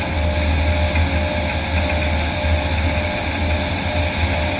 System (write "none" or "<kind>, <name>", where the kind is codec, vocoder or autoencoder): none